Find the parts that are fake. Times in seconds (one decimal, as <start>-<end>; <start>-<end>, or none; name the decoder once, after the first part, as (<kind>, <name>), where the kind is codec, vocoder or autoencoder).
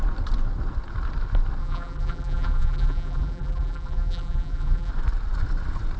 1.6-4.9 (vocoder, BigVGAN v2)